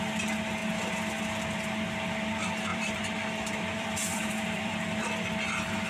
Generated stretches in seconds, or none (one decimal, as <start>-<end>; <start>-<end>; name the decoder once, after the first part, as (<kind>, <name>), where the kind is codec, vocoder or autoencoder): 2.7-5.1 (vocoder, BigVGAN v2)